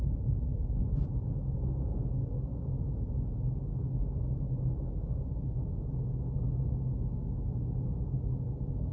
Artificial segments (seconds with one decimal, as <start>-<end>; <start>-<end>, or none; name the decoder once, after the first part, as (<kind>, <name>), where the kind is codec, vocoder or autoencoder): none